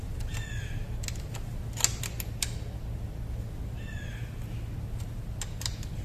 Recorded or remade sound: recorded